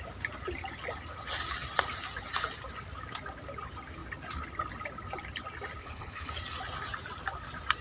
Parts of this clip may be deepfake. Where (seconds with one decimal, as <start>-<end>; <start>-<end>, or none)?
5.8-6.3